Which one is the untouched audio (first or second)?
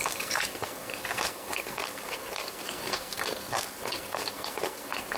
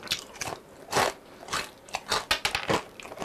second